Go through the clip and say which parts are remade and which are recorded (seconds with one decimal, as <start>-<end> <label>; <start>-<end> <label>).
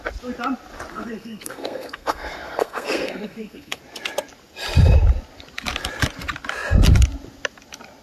0.0-0.9 recorded; 0.9-3.8 remade; 3.8-8.0 recorded